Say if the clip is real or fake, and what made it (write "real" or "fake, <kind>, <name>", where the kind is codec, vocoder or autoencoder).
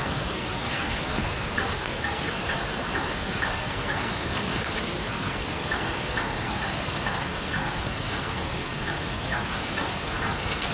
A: fake, codec, SNAC